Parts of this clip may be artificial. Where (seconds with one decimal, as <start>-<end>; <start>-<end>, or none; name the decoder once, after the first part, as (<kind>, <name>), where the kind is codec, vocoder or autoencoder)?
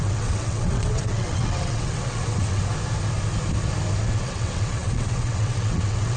0.0-2.6 (vocoder, WaveNeXt); 4.0-6.2